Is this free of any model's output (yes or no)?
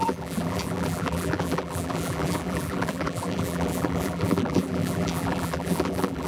no